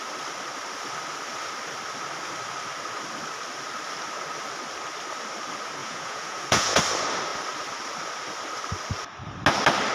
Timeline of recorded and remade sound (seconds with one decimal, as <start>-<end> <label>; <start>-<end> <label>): 0.0-5.8 recorded; 5.8-6.8 remade; 6.8-9.9 recorded